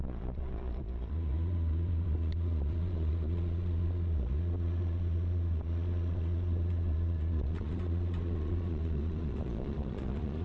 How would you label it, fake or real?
fake